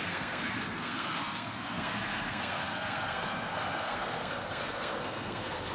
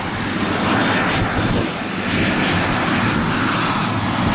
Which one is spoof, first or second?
first